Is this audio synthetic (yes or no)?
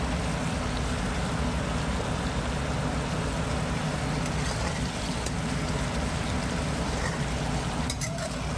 no